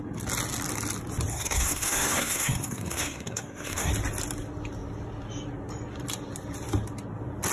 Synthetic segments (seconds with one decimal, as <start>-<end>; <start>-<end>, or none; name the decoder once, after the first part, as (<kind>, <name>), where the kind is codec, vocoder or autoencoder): 1.3-3.9 (codec, SNAC)

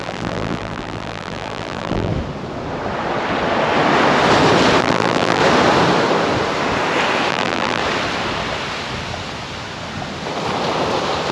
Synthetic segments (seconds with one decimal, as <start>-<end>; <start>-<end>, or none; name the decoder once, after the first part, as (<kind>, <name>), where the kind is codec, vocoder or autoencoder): 0.0-2.1 (vocoder, BigVGAN v2); 4.8-5.4; 7.3-7.8

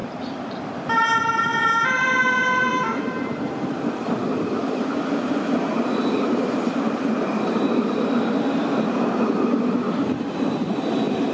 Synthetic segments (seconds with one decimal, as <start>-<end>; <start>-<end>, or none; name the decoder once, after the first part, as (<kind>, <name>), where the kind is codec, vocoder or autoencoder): 0.0-11.3 (vocoder, BigVGAN v2)